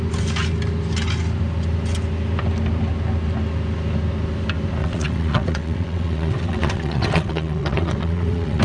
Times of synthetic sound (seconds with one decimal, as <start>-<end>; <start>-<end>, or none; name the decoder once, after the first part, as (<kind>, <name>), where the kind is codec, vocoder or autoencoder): 4.8-8.6 (vocoder, WaveNeXt)